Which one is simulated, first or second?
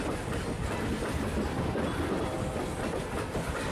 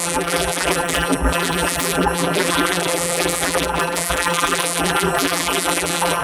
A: second